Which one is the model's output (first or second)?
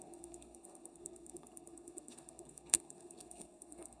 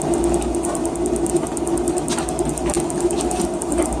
first